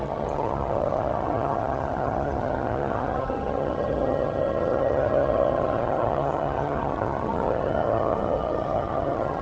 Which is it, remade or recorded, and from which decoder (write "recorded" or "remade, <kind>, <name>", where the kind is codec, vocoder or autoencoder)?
remade, vocoder, HiFi-GAN